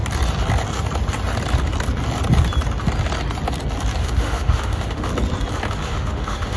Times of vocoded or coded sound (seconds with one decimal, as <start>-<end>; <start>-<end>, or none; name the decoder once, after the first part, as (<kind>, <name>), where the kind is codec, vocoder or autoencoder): 4.0-5.1 (autoencoder, DAC-VAE); 5.7-6.6